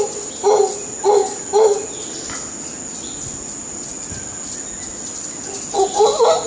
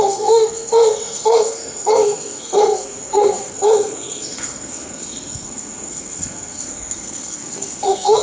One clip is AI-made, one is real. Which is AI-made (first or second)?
second